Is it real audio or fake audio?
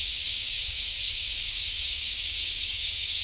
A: fake